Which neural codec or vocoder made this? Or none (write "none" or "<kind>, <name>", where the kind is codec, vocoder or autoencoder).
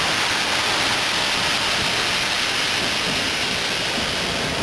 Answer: none